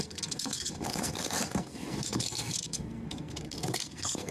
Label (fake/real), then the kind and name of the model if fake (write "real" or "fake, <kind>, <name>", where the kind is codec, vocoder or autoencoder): fake, codec, SNAC